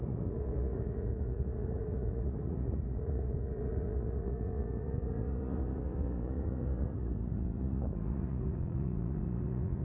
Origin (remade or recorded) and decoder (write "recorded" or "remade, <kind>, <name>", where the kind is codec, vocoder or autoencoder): remade, vocoder, Vocos